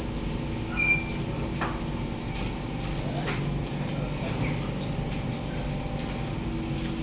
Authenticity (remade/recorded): recorded